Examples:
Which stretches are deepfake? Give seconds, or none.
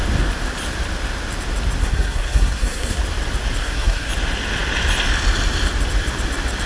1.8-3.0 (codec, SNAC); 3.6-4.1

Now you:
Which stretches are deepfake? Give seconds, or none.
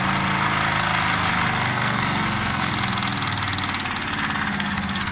1.7-2.7 (codec, SNAC); 4.5-5.1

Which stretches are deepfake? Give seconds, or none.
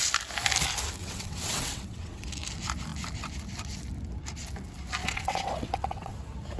1.0-2.3 (vocoder, WaveNeXt); 5.0-6.1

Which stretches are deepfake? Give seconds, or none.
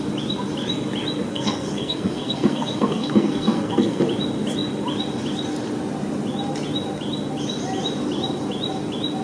1.3-4.0 (codec, SNAC)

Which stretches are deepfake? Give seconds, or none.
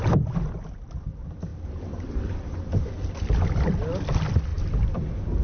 1.5-2.9 (vocoder, BigVGAN v2); 4.5-5.4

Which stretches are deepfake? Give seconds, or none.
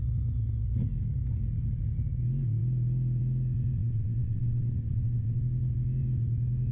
3.8-5.4 (vocoder, WaveNeXt)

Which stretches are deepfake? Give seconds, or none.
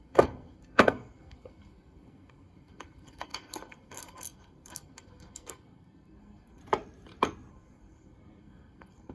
0.0-6.6 (codec, SNAC); 7.5-9.1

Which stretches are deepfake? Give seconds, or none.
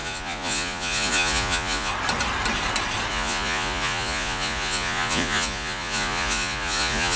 0.0-1.9 (vocoder, Vocos); 3.1-7.2